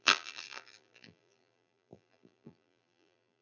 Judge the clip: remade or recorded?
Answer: remade